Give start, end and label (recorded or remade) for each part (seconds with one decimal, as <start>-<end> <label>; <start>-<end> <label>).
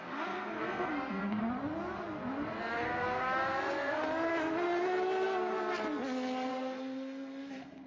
0.0-1.4 remade; 1.4-2.7 recorded; 2.7-4.0 remade; 4.0-6.5 recorded; 6.5-7.9 remade